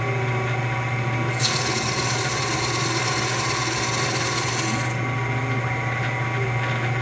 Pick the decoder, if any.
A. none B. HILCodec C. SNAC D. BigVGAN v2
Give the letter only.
A